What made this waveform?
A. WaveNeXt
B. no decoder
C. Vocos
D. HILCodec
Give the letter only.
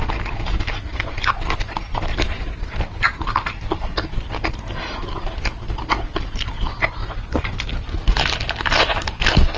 B